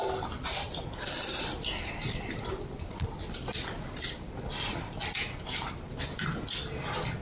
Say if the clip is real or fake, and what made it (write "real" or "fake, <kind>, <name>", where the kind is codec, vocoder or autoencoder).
real